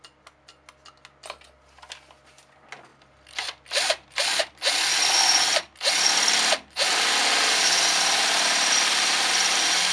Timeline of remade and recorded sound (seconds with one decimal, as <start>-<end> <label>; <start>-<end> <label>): 0.0-2.9 recorded; 2.9-4.2 remade; 4.2-9.9 recorded